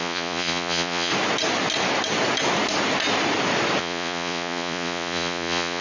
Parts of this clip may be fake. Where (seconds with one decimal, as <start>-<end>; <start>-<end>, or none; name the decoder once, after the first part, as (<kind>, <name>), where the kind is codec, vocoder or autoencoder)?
0.0-1.1 (vocoder, Vocos); 3.8-5.8